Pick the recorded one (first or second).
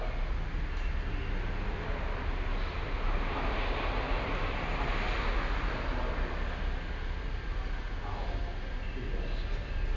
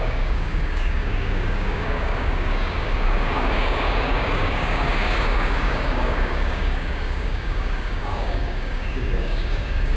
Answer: first